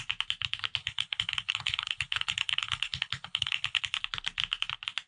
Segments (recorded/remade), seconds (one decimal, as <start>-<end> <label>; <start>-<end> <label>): 0.0-0.8 recorded; 0.8-3.8 remade; 3.8-5.1 recorded